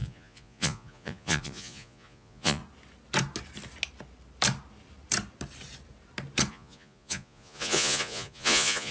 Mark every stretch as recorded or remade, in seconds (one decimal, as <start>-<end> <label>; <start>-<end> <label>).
0.0-2.6 remade; 2.6-6.5 recorded; 6.5-8.9 remade